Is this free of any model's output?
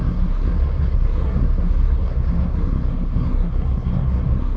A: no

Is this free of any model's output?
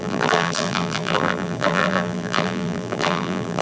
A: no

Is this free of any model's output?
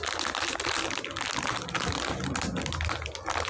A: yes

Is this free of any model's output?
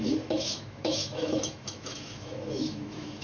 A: no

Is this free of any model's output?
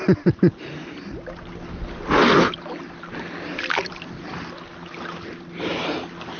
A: yes